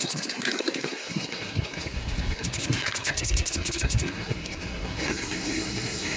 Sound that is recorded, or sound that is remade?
remade